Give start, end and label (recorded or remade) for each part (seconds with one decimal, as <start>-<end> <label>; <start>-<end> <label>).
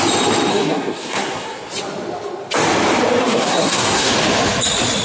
0.0-0.5 recorded; 0.5-1.7 remade; 1.7-3.2 recorded; 3.2-4.1 remade; 4.1-5.0 recorded